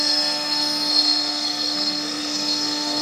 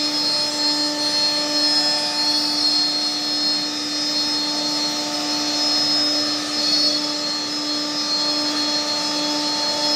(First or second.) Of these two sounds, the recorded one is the second